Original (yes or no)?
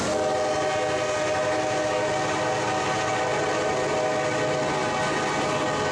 yes